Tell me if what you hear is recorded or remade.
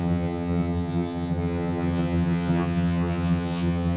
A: remade